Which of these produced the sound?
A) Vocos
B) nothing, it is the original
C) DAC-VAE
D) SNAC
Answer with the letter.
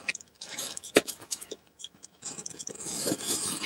C